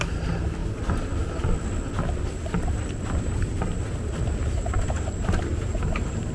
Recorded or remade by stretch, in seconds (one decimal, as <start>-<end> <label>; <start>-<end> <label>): 0.0-0.6 remade; 0.6-3.2 recorded; 3.2-3.7 remade; 3.7-4.5 recorded; 4.5-6.3 remade